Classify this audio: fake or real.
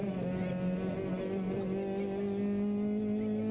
real